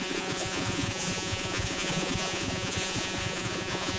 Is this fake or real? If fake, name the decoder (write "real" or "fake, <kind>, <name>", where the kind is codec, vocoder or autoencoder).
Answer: fake, vocoder, Vocos